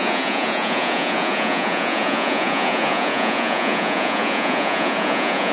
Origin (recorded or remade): remade